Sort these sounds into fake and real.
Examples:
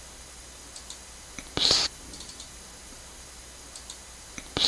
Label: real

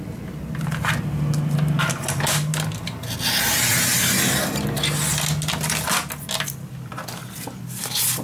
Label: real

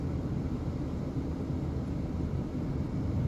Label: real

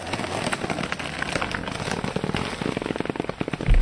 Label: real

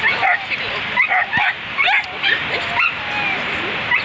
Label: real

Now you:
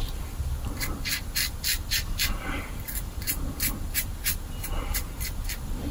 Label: fake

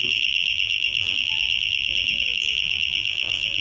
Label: fake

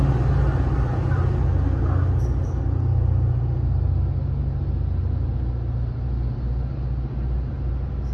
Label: real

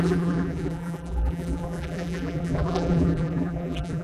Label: fake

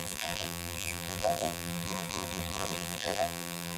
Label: fake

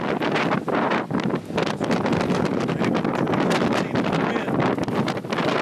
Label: real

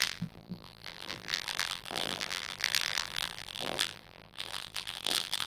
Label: fake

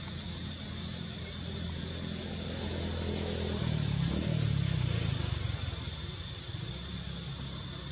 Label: real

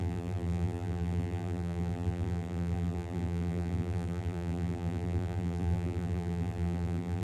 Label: fake